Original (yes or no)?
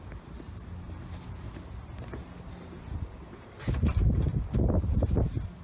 yes